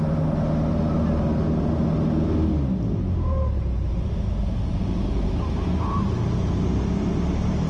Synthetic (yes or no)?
no